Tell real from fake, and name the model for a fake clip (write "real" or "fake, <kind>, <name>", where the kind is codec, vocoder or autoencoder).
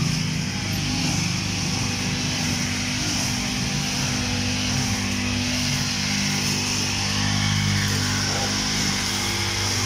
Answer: real